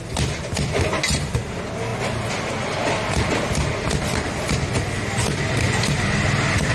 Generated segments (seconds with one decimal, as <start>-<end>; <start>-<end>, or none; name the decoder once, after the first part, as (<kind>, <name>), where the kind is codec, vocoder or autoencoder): none